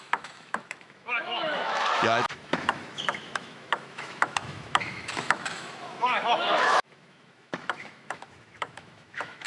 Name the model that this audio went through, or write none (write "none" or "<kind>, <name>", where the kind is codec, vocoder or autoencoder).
autoencoder, DAC-VAE